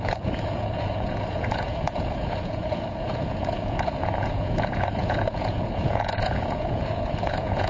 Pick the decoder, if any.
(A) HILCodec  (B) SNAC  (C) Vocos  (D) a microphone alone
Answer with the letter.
C